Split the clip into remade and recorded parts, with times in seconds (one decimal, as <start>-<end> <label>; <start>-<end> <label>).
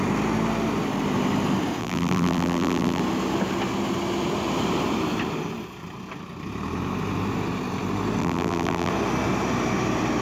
0.0-1.8 recorded; 1.8-3.0 remade; 3.0-8.2 recorded; 8.2-8.9 remade; 8.9-10.2 recorded